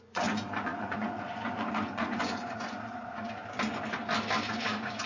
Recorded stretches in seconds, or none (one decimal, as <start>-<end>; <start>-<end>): 3.4-4.5